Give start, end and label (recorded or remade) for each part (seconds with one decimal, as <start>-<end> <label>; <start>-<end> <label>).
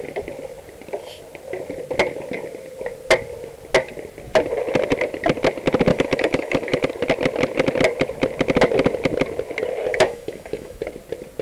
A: 0.0-5.9 recorded; 5.9-6.9 remade; 6.9-9.9 recorded; 9.9-10.8 remade; 10.8-11.4 recorded